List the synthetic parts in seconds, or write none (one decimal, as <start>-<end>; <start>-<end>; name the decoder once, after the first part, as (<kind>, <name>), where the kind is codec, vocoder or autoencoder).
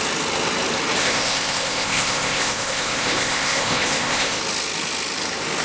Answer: 1.0-4.4 (codec, ZipCodec)